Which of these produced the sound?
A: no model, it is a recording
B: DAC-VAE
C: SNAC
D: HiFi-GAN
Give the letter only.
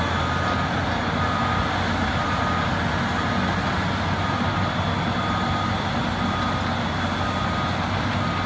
A